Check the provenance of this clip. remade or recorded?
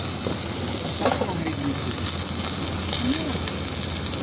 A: recorded